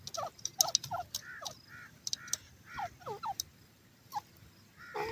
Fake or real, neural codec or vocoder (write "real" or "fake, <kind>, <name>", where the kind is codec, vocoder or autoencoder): real